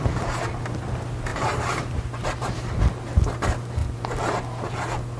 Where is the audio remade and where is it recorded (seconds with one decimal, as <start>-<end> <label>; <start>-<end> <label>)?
0.0-1.3 recorded; 1.3-2.2 remade; 2.2-3.8 recorded; 3.8-4.4 remade; 4.4-5.2 recorded